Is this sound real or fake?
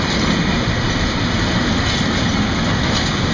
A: real